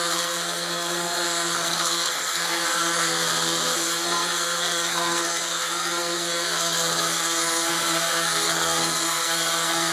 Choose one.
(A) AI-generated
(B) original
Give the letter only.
A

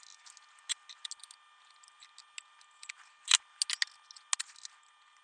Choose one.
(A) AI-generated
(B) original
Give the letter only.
B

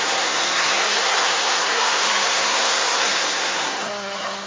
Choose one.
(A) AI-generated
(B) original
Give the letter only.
A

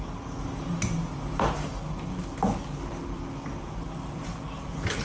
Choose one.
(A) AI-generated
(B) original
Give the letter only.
B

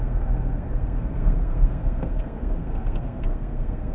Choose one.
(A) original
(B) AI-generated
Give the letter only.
B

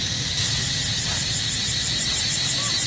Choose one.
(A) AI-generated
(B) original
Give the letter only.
B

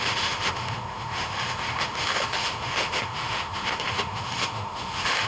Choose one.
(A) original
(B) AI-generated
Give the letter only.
B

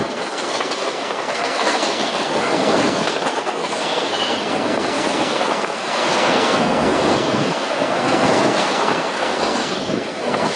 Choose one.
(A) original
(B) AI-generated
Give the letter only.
B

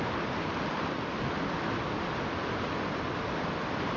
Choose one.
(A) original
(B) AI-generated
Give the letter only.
A